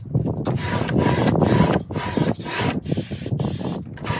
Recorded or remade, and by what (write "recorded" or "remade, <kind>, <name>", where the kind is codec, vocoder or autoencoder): recorded